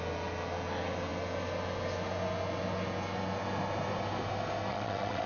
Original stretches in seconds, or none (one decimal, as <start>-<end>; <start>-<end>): 0.0-4.7

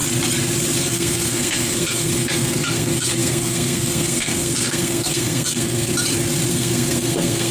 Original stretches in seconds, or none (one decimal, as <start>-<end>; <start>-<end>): 0.0-0.8; 5.9-6.5

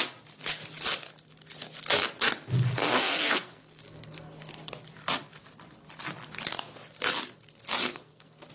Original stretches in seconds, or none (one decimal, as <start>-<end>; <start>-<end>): 0.0-2.9; 4.7-7.9

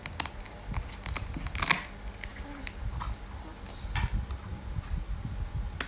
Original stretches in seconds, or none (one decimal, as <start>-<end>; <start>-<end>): 0.0-5.9

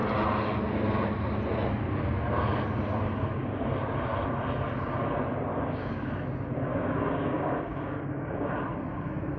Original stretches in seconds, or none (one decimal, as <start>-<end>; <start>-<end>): 0.0-5.5; 6.1-6.7; 8.5-9.4

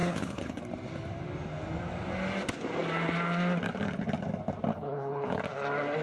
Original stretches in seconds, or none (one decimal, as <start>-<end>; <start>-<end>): 0.6-4.7; 5.4-6.0